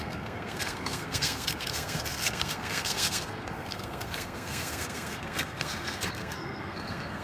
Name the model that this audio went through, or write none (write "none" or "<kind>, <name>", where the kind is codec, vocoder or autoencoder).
codec, SNAC